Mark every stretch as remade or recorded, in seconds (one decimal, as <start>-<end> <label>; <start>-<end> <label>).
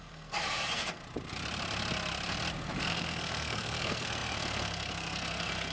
0.0-1.0 remade; 1.0-2.8 recorded; 2.8-5.7 remade